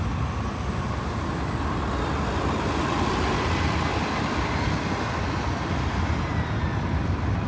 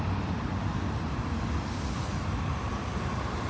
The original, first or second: first